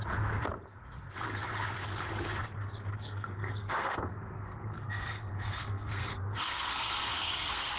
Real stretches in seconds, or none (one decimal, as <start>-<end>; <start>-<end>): 0.0-2.9